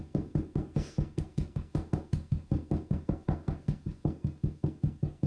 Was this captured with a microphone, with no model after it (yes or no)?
no